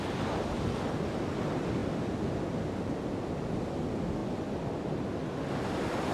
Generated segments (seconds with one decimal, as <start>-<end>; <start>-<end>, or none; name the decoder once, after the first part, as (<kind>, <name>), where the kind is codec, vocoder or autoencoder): none

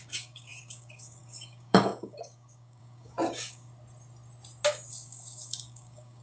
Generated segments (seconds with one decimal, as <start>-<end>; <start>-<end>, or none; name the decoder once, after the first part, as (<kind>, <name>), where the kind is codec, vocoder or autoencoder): 0.0-3.7 (codec, DAC); 4.9-6.2

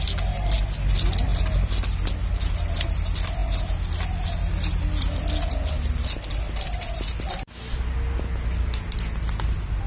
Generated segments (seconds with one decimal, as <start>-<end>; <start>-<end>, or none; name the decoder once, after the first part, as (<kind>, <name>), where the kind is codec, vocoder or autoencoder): none

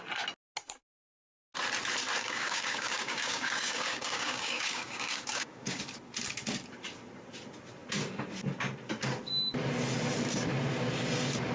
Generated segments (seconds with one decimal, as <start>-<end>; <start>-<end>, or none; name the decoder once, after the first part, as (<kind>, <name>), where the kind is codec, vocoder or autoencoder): 2.2-5.8 (codec, DAC)

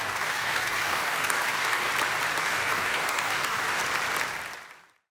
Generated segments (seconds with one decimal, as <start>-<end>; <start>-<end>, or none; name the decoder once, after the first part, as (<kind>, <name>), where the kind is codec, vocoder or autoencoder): 0.0-1.9 (codec, DAC); 2.4-3.8

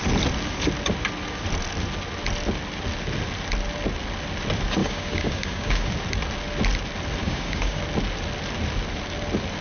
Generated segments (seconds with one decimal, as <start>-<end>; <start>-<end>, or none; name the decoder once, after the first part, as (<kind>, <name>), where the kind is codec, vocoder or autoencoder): 4.8-5.9 (codec, DAC); 7.2-7.8

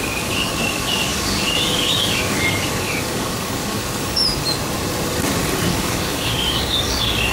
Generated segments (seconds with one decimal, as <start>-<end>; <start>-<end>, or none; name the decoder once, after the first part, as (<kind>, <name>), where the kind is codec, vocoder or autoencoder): 0.0-4.2 (codec, DAC); 5.7-7.3